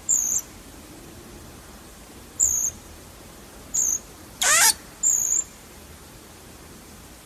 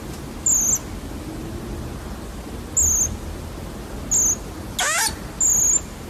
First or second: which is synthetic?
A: first